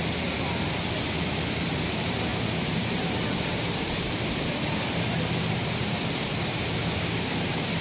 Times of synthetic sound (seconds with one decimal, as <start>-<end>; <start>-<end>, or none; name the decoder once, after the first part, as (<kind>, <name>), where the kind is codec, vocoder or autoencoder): 2.3-6.0 (vocoder, BigVGAN v2)